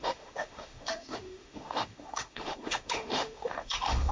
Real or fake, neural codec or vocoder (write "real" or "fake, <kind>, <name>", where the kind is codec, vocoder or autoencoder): fake, autoencoder, DAC-VAE